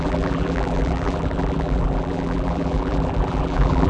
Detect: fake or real fake